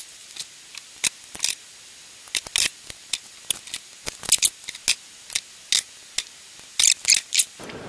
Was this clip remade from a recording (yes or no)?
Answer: no